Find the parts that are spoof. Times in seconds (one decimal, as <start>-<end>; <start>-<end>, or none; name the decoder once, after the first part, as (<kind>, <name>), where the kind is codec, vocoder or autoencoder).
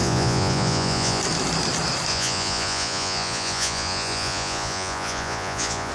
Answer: 0.0-1.2 (vocoder, Vocos); 2.1-5.9